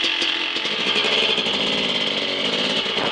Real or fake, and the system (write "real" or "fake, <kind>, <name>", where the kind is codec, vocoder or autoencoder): real